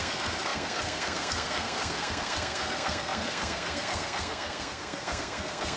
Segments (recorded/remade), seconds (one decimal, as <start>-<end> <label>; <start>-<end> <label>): 0.0-5.8 remade

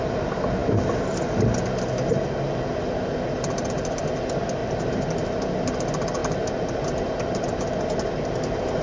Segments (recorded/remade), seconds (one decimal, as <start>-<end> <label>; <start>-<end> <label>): 0.0-4.6 recorded; 4.6-5.5 remade; 5.5-6.2 recorded; 6.2-7.6 remade; 7.6-8.8 recorded

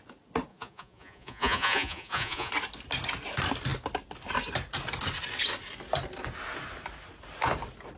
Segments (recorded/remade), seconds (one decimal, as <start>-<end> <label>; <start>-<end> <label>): 0.0-0.5 recorded; 0.5-2.5 remade; 2.5-8.0 recorded

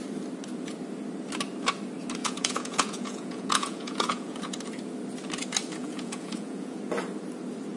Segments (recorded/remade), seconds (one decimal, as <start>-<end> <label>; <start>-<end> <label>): 0.0-2.2 recorded; 2.2-4.5 remade; 4.5-5.8 recorded; 5.8-6.8 remade; 6.8-7.8 recorded

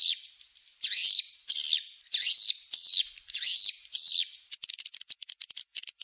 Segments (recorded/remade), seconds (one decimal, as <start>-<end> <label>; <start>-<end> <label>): 0.0-1.3 remade; 1.3-6.0 recorded